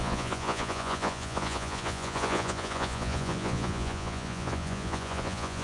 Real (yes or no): no